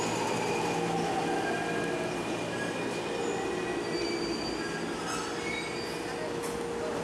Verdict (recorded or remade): recorded